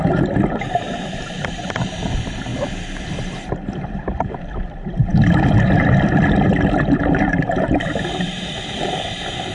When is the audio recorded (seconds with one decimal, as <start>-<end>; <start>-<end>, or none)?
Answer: 2.5-3.9

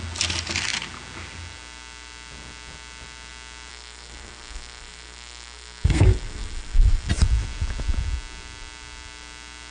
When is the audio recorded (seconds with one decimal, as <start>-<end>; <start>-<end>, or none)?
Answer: 0.0-3.7; 7.1-9.7